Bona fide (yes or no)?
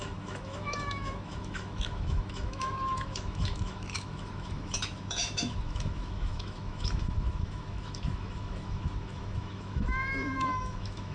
no